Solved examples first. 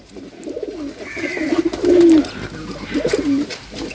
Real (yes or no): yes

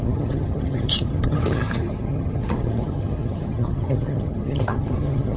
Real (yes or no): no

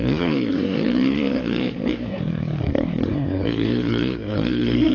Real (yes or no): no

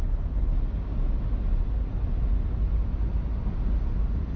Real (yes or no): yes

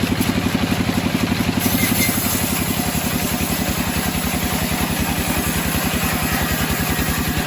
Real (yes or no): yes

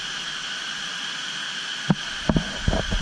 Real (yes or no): yes